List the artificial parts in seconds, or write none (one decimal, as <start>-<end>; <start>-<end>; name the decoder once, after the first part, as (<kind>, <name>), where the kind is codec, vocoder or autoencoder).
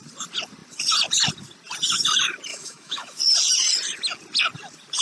2.5-3.2 (autoencoder, DAC-VAE)